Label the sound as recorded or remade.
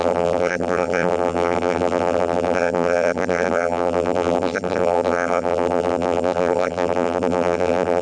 remade